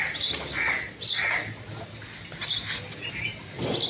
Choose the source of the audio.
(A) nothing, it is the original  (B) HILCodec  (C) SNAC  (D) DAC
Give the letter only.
A